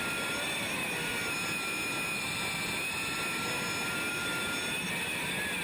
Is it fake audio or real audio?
real